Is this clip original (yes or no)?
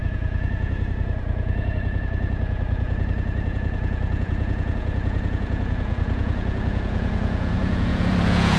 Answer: no